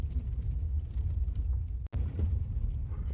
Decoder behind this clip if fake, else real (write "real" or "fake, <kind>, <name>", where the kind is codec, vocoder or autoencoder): real